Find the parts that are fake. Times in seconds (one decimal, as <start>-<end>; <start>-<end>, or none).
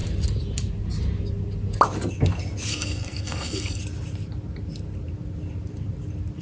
2.7-3.8